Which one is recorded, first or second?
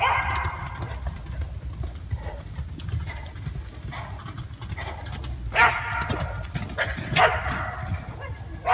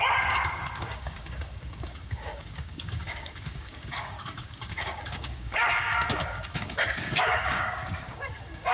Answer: first